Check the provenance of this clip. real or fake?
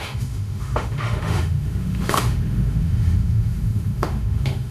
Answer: fake